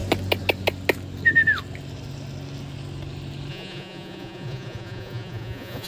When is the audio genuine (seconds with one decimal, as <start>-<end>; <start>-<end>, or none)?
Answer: 0.0-3.5